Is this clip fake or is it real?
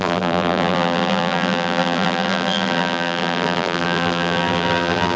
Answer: fake